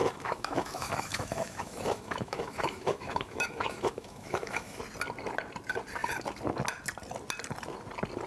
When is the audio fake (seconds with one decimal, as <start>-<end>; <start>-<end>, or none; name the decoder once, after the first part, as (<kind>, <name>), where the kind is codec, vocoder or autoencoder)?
0.0-4.8 (autoencoder, DAC-VAE)